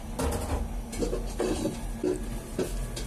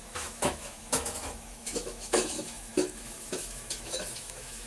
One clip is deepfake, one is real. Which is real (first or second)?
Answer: first